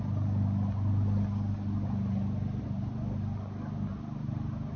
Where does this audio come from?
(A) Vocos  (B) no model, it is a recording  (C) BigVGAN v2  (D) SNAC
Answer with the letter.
B